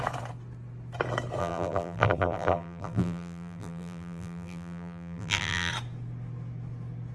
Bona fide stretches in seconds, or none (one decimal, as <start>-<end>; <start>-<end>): 0.0-1.4; 5.7-7.1